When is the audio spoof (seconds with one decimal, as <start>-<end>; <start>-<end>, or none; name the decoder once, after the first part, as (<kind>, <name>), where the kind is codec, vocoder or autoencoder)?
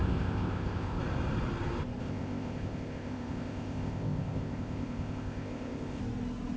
0.0-1.0 (codec, ZipCodec); 2.0-6.0